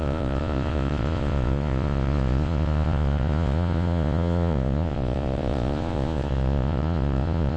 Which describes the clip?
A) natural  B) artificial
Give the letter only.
B